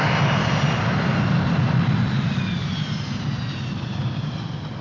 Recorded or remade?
recorded